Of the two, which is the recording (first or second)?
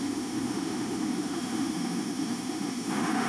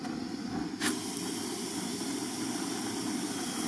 second